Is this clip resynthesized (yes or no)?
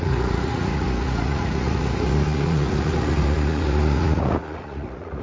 yes